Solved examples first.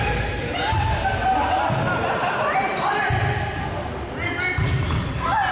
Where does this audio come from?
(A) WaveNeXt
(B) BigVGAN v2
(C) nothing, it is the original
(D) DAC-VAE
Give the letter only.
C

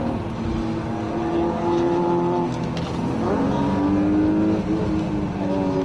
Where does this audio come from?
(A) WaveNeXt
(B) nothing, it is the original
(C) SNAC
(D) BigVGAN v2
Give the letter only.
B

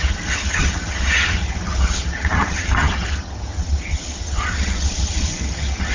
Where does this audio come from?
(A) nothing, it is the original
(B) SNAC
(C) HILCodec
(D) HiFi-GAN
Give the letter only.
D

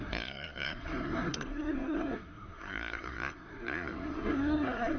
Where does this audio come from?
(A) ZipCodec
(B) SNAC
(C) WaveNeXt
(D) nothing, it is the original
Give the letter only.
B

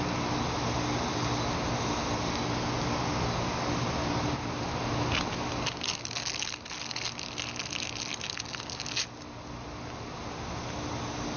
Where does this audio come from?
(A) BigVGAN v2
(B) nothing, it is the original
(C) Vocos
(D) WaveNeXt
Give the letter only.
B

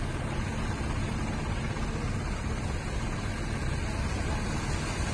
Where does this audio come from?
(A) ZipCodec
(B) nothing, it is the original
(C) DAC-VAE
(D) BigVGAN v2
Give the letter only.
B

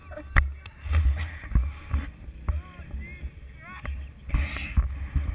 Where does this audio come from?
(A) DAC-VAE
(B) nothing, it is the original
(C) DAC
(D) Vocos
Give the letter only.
B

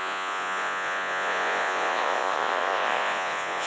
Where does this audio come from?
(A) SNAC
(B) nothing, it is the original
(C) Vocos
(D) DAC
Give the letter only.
C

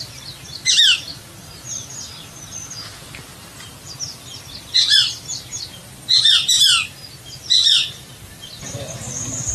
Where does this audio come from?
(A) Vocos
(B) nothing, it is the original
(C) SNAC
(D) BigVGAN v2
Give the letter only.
B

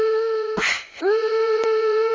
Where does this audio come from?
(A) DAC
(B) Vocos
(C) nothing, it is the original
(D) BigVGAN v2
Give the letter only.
B